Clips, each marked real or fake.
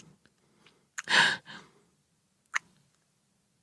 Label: real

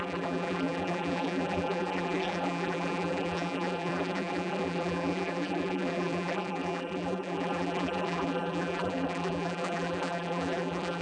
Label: fake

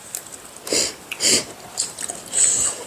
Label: real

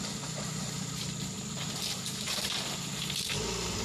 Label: real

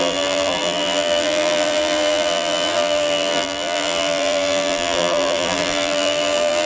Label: fake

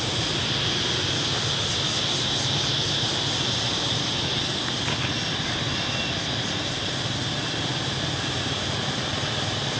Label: real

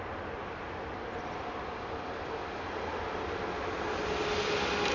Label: real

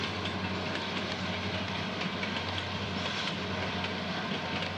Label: fake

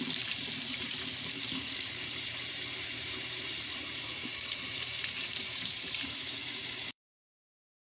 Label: fake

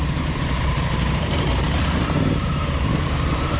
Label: fake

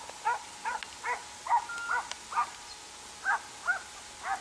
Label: real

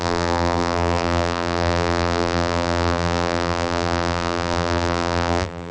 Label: fake